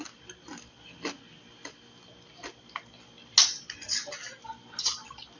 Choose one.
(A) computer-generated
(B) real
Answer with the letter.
B